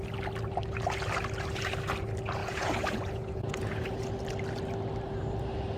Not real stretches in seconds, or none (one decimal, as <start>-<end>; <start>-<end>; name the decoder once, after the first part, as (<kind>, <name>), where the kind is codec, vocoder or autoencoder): 2.4-4.0 (vocoder, Vocos)